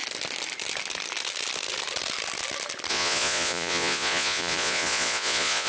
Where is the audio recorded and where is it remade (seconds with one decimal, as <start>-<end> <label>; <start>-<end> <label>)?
0.0-2.9 recorded; 2.9-5.7 remade